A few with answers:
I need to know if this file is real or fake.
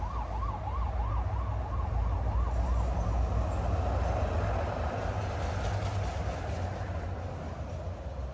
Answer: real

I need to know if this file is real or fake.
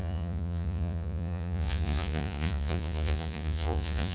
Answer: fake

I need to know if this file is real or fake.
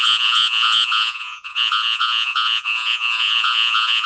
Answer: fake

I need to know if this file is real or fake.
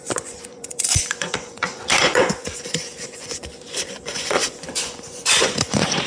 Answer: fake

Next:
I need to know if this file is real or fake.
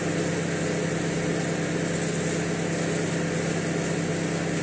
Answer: real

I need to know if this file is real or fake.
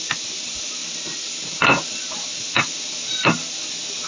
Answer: real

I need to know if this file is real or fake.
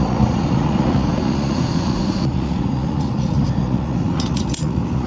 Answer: fake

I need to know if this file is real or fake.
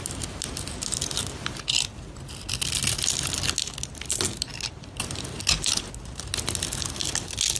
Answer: real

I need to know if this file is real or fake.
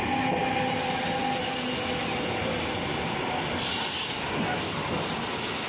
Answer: real